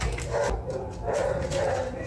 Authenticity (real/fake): real